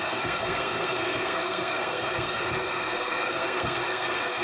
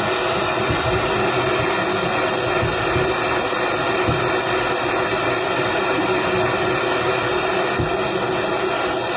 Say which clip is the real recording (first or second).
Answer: second